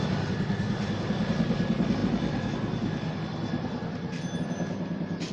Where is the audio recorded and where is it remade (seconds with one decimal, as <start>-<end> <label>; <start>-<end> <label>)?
0.0-5.3 recorded